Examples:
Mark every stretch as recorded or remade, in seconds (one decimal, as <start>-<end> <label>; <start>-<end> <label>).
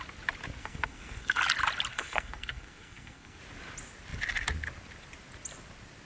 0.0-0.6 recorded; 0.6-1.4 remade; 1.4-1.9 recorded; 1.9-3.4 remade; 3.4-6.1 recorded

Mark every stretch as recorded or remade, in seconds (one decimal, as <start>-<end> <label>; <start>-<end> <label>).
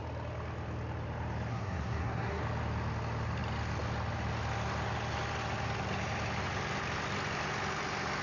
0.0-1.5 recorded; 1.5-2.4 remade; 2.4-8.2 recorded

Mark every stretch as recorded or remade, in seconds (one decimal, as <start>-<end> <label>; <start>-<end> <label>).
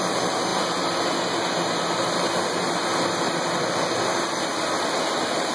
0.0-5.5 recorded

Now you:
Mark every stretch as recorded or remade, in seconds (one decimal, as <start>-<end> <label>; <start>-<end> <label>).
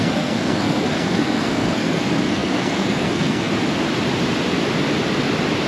0.0-3.5 remade; 3.5-5.7 recorded